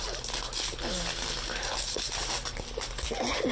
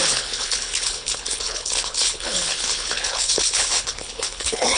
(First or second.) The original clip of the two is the first